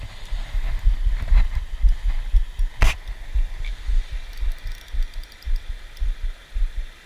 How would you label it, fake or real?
real